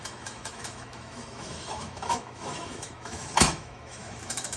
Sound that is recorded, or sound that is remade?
remade